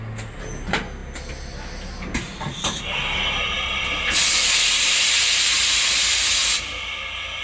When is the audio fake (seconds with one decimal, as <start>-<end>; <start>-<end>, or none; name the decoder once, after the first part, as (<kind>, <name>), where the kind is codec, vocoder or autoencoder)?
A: none